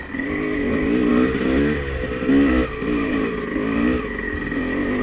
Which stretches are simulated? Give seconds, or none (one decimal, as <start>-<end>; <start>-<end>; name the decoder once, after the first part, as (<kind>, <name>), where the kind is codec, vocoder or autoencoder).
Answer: none